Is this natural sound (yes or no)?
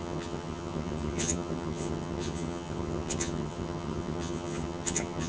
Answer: no